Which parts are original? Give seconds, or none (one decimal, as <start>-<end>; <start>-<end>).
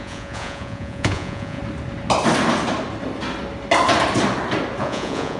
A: 1.6-4.8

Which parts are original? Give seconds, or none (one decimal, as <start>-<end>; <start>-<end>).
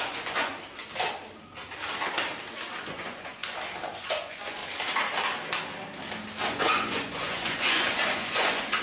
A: 0.5-2.8; 3.4-4.0; 4.6-6.5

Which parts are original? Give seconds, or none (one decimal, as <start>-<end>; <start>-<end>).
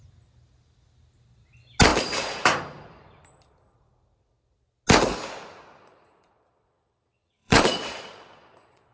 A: 0.0-5.8